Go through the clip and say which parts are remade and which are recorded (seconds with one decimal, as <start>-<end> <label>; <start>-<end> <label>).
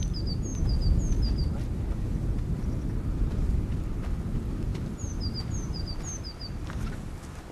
0.0-7.5 recorded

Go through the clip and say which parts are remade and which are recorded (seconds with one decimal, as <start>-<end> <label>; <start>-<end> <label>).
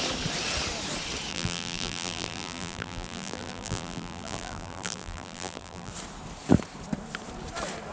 0.0-1.3 recorded; 1.3-5.9 remade; 5.9-7.9 recorded